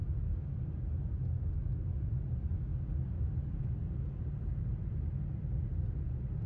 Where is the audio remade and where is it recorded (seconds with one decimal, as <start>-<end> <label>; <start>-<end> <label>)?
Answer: 0.0-6.5 recorded